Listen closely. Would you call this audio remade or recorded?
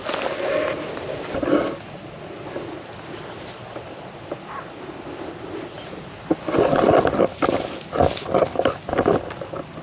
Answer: recorded